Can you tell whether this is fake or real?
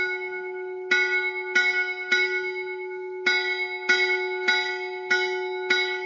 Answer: real